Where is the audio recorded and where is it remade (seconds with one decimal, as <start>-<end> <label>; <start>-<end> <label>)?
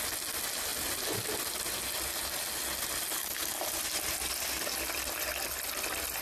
0.0-6.2 recorded